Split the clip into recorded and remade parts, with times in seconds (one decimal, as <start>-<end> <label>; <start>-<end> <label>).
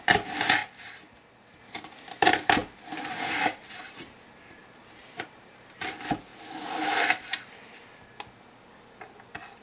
0.0-0.6 remade; 0.6-1.6 recorded; 1.6-6.3 remade; 6.3-9.6 recorded